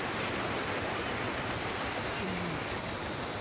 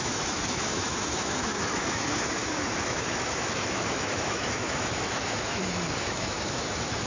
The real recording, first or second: first